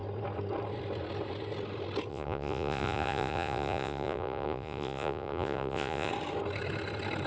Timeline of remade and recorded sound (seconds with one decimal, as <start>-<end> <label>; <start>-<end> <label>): 0.0-2.1 recorded; 2.1-6.1 remade; 6.1-7.3 recorded